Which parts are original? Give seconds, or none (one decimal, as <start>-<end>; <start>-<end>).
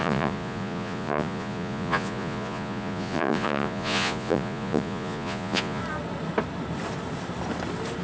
5.8-8.0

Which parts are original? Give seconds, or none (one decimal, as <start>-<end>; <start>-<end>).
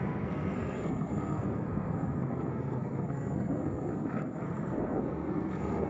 none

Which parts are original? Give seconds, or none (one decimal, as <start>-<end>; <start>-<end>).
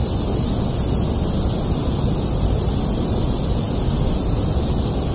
0.0-5.1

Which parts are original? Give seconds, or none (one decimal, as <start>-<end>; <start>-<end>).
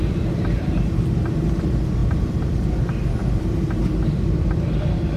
0.0-2.0; 2.7-3.2; 4.6-5.2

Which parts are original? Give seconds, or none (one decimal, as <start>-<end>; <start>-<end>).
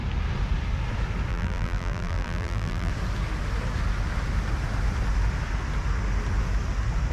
0.0-1.3; 2.9-7.1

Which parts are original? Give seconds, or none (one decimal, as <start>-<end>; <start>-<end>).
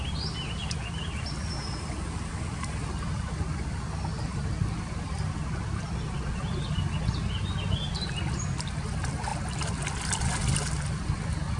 0.0-11.6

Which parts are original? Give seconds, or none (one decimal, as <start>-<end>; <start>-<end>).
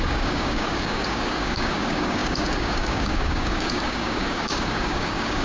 none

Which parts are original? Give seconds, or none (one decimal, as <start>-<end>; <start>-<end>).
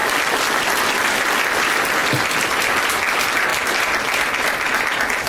0.0-2.0; 2.9-5.3